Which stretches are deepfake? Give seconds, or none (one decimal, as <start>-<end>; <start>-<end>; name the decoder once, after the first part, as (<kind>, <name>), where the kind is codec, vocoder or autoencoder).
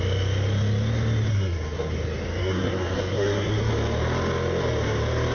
1.3-1.9 (codec, SNAC); 2.4-3.7